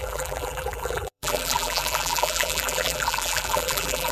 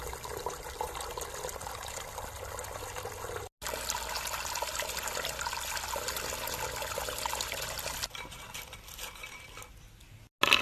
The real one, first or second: second